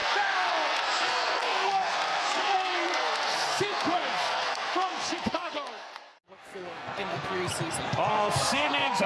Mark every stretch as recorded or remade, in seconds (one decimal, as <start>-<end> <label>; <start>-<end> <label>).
0.0-7.4 remade; 7.4-8.1 recorded; 8.1-9.1 remade